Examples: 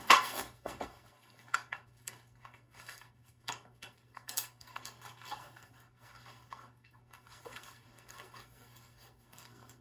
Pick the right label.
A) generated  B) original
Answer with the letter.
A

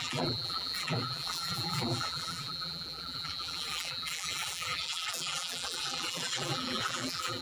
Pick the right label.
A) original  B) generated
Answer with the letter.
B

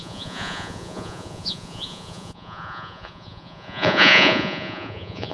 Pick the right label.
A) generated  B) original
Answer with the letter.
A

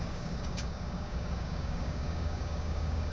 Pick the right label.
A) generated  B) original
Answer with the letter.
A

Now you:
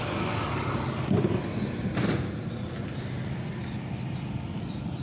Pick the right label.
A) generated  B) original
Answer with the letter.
B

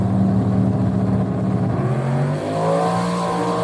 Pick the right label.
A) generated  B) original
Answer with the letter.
B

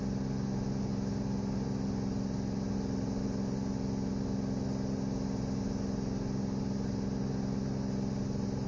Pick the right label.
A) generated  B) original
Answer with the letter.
B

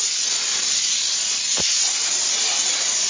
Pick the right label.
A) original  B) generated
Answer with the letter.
A